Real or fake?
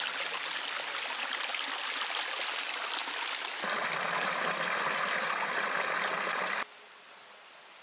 real